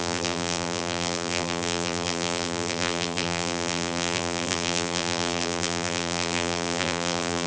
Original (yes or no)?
no